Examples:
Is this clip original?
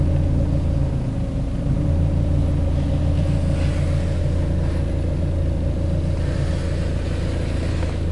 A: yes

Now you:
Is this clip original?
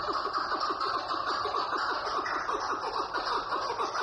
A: yes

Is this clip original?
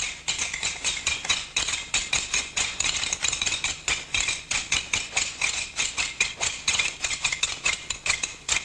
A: no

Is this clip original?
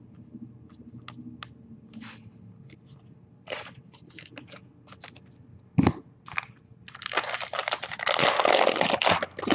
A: yes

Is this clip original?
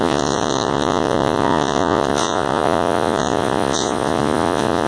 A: no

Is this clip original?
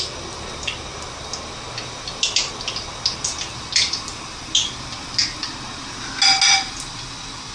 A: yes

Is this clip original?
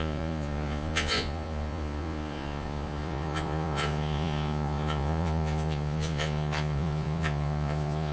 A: no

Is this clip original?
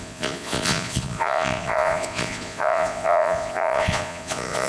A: no